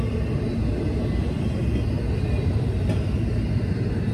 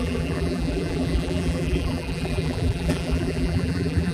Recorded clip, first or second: first